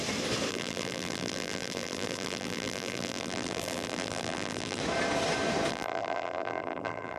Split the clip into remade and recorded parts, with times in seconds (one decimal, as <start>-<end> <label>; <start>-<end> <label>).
0.0-0.5 recorded; 0.5-4.8 remade; 4.8-5.7 recorded; 5.7-7.2 remade